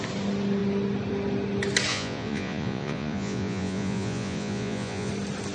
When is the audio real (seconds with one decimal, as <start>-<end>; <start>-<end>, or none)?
0.0-1.9; 5.1-5.5

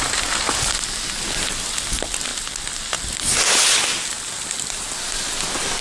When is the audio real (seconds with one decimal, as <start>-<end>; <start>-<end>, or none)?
0.0-5.8

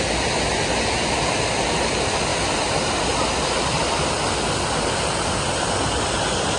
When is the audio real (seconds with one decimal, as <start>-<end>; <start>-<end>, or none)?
0.0-6.6

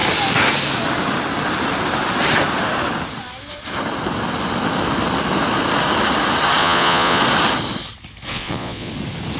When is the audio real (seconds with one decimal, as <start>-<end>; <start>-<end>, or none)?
0.0-6.6; 7.2-8.3; 8.9-9.4

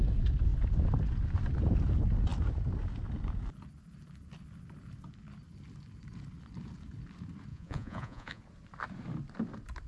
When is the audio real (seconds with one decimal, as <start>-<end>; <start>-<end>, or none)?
0.0-7.5; 8.4-9.9

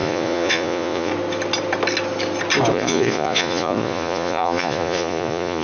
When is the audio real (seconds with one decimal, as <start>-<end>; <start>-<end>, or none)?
1.1-2.7

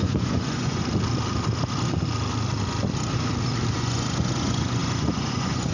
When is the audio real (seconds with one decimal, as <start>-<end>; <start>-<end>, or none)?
0.8-3.7